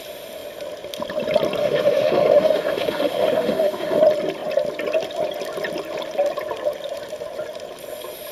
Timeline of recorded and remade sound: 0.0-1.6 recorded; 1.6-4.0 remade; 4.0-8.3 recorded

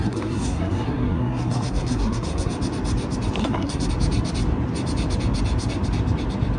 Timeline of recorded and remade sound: 0.0-2.5 remade; 2.5-3.4 recorded; 3.4-3.9 remade; 3.9-6.6 recorded

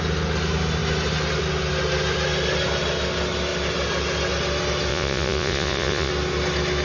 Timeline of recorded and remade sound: 0.0-4.9 recorded; 4.9-6.1 remade; 6.1-6.8 recorded

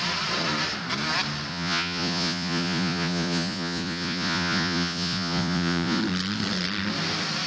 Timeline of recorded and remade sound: 0.0-1.5 recorded; 1.5-6.0 remade; 6.0-7.5 recorded

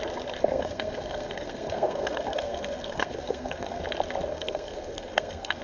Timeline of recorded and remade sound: 0.0-0.4 recorded; 0.4-3.8 remade; 3.8-4.3 recorded; 4.3-5.6 remade

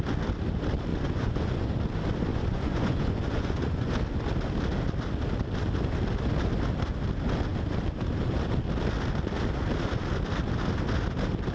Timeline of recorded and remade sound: 0.0-0.9 recorded; 0.9-1.7 remade; 1.7-2.3 recorded; 2.3-3.9 remade; 3.9-11.5 recorded

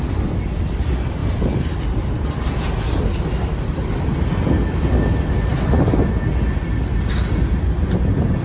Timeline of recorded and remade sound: 0.0-1.2 recorded; 1.2-4.5 remade; 4.5-8.4 recorded

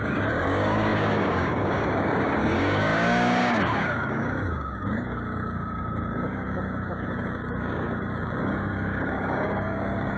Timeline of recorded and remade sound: 0.0-10.2 remade